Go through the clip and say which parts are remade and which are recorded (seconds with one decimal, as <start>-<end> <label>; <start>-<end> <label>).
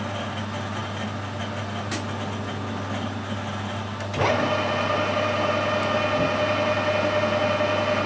0.0-8.1 recorded